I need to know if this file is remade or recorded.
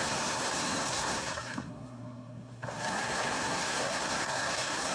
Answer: remade